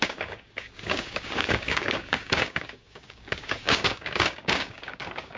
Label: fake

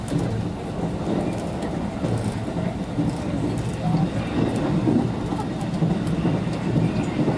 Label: real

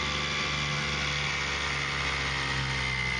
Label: real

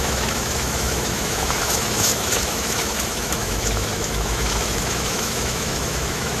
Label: fake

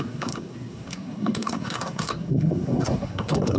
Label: fake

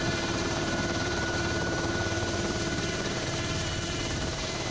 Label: fake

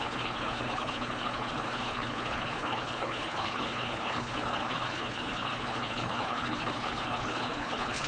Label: fake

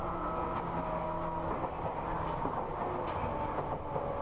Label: real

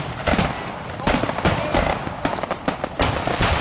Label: real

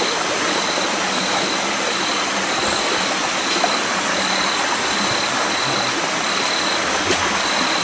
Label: real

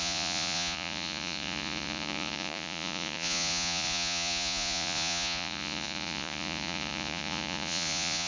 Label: fake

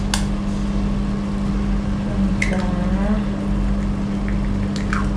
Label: real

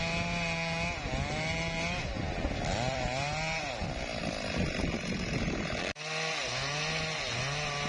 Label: real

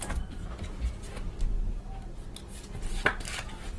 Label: real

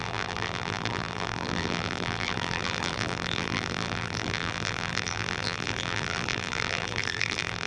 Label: fake